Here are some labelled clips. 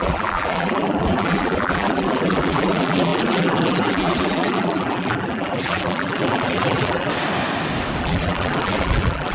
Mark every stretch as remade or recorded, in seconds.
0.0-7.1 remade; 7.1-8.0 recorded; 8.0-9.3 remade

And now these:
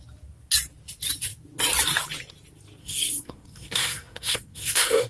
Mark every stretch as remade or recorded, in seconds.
0.0-2.8 recorded; 2.8-5.1 remade

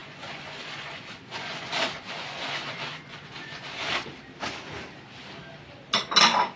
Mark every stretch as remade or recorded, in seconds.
0.0-3.9 remade; 3.9-6.6 recorded

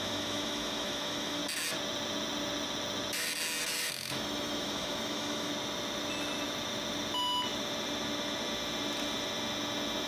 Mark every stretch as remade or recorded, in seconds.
0.0-1.4 remade; 1.4-3.9 recorded; 3.9-5.5 remade; 5.5-10.1 recorded

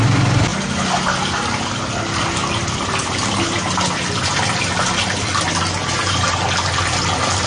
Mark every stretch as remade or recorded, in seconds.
0.0-7.5 recorded

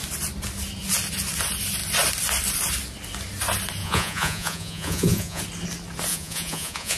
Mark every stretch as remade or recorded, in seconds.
0.0-3.8 recorded; 3.8-5.4 remade; 5.4-6.1 recorded; 6.1-7.0 remade